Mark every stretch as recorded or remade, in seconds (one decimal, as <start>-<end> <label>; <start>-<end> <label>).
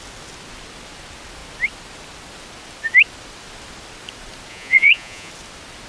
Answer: 0.0-4.5 recorded; 4.5-5.3 remade; 5.3-5.9 recorded